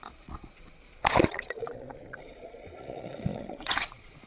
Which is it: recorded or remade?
remade